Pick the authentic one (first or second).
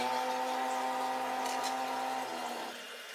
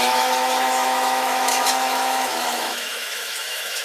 first